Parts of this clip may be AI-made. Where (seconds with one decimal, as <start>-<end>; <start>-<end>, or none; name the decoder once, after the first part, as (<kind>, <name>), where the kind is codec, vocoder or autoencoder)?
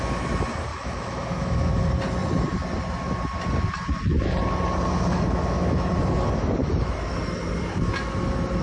0.7-1.8 (autoencoder, DAC-VAE); 5.1-5.9; 6.6-7.1